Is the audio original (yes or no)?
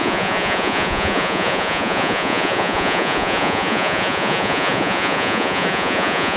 no